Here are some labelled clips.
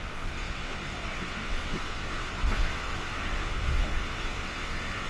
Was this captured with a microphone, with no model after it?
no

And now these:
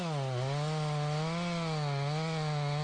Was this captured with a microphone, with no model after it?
yes